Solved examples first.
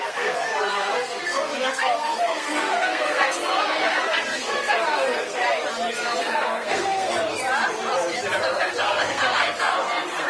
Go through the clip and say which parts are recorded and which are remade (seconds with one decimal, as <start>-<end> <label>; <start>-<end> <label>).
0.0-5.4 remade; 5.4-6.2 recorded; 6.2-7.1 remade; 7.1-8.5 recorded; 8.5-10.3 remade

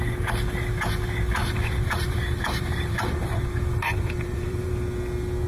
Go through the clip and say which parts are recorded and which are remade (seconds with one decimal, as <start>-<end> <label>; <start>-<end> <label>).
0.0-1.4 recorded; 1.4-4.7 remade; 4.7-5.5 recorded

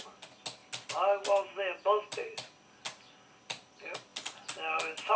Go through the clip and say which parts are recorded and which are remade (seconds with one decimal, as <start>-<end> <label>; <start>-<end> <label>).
0.0-5.2 recorded

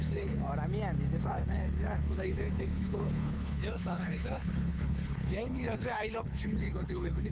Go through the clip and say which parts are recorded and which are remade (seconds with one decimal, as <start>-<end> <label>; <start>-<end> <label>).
0.0-0.5 remade; 0.5-1.2 recorded; 1.2-7.3 remade

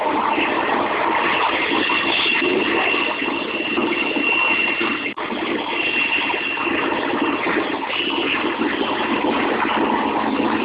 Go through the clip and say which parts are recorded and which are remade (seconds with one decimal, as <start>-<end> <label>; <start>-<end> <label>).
0.0-10.6 recorded

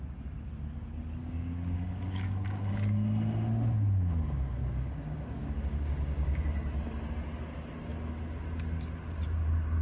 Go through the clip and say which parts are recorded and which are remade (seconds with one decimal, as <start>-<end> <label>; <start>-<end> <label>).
0.0-1.2 recorded; 1.2-2.7 remade; 2.7-4.6 recorded; 4.6-6.4 remade; 6.4-9.8 recorded